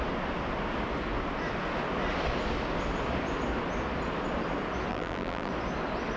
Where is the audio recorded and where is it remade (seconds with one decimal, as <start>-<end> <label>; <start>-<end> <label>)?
0.0-4.9 recorded; 4.9-5.5 remade; 5.5-6.2 recorded